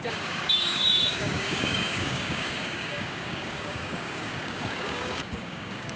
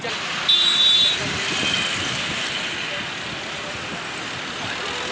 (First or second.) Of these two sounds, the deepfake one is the first